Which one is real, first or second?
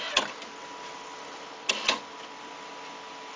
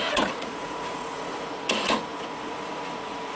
first